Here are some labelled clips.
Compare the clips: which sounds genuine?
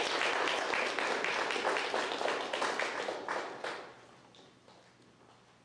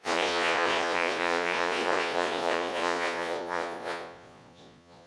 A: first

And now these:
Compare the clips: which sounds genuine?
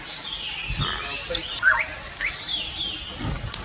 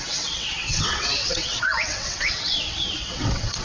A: first